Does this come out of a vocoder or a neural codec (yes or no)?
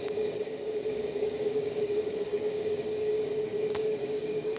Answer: yes